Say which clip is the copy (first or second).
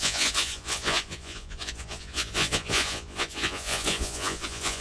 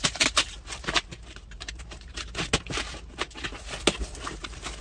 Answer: first